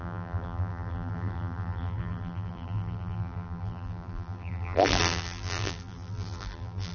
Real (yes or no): no